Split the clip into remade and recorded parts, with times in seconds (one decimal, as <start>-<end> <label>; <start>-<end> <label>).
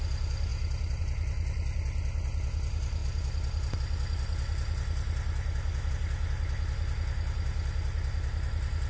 0.0-8.9 recorded